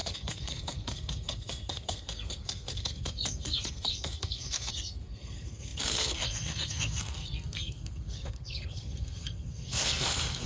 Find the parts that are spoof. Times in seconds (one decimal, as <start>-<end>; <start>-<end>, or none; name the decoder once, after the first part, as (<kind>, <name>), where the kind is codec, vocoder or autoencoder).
0.0-10.5 (codec, SNAC)